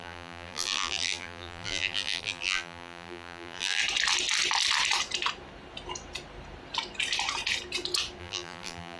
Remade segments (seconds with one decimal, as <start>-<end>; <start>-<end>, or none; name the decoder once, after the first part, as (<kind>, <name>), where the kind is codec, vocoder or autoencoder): 0.0-3.8 (vocoder, BigVGAN v2); 8.2-9.0